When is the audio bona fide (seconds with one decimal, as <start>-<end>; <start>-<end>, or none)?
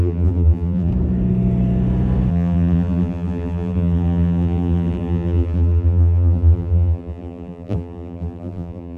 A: 0.9-2.3